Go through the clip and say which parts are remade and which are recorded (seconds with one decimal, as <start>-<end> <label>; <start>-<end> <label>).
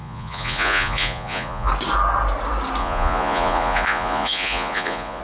0.0-1.7 remade; 1.7-2.8 recorded; 2.8-5.2 remade